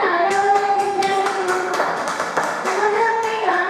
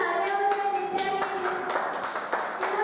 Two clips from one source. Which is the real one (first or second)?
second